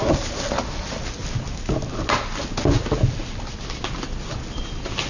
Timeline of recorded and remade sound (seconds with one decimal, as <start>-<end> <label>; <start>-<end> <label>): 0.0-5.1 recorded